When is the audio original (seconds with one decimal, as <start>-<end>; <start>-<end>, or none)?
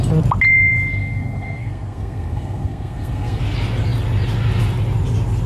0.0-1.0; 3.4-5.5